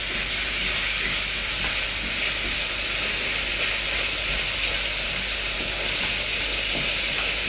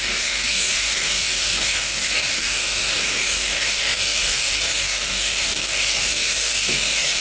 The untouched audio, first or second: first